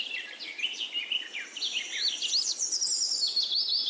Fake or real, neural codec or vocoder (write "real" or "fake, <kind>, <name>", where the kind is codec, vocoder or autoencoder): real